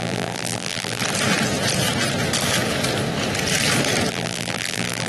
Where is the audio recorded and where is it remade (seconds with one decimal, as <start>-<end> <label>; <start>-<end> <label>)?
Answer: 0.0-1.0 remade; 1.0-4.1 recorded; 4.1-5.1 remade